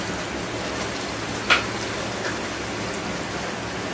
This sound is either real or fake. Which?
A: real